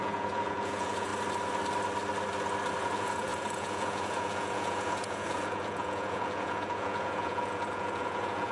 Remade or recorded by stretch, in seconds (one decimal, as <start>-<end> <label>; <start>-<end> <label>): 0.0-1.1 remade; 1.1-2.8 recorded; 2.8-8.5 remade